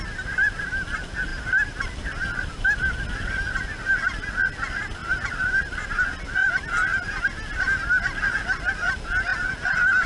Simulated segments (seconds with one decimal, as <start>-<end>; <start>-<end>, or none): none